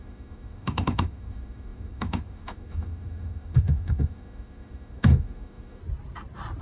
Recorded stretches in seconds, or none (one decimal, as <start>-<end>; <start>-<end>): 5.8-6.6